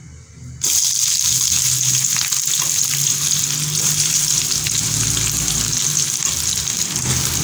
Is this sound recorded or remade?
recorded